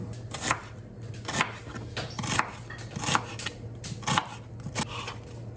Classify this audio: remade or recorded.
recorded